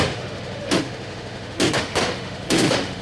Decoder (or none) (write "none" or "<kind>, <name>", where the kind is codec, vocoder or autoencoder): autoencoder, DAC-VAE